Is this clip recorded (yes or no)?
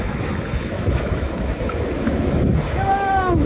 no